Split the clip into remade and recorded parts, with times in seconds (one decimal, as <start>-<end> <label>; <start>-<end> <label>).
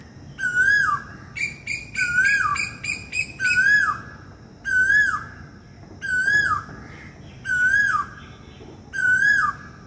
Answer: 0.0-9.0 recorded; 9.0-9.5 remade; 9.5-9.9 recorded